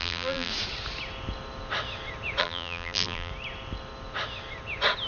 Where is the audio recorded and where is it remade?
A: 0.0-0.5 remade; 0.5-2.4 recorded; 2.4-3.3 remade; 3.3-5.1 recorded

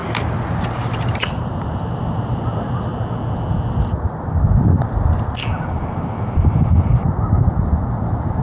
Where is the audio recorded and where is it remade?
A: 0.0-0.7 recorded; 0.7-2.9 remade; 2.9-5.6 recorded; 5.6-8.4 remade

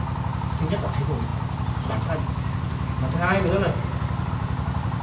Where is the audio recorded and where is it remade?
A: 0.0-5.0 recorded

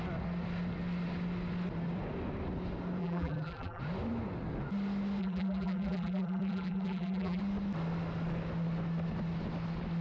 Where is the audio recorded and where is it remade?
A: 0.0-3.0 recorded; 3.0-3.8 remade; 3.8-5.2 recorded; 5.2-7.4 remade; 7.4-10.0 recorded

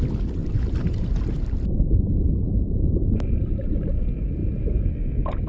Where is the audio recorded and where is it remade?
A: 0.0-0.4 recorded; 0.4-3.7 remade; 3.7-4.4 recorded; 4.4-4.9 remade; 4.9-5.5 recorded